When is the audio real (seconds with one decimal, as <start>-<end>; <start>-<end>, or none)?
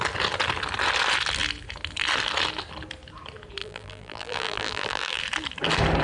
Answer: 0.0-3.6; 5.2-6.0